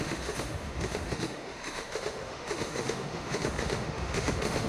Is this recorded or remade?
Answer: remade